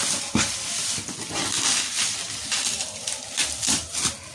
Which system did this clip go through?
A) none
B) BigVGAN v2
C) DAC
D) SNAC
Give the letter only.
A